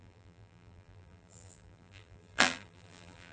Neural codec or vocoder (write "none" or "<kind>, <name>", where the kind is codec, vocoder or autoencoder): vocoder, BigVGAN v2